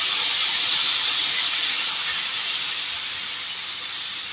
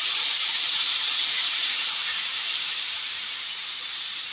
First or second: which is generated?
second